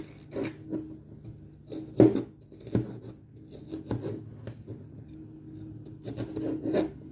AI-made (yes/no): no